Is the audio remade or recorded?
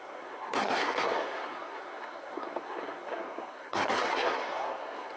remade